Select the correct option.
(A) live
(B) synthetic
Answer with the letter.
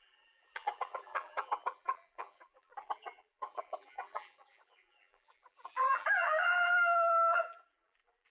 B